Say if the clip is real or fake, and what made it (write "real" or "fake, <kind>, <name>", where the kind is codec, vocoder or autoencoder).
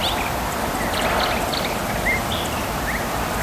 real